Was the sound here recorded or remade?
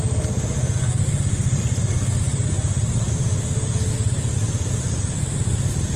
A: recorded